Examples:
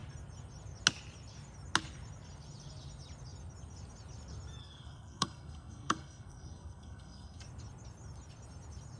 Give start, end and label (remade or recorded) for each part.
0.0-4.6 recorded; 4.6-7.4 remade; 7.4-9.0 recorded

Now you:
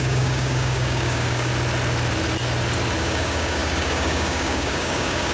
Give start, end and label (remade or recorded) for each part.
0.0-1.5 remade; 1.5-3.0 recorded; 3.0-5.3 remade